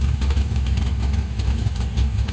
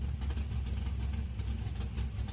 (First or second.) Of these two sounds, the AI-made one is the first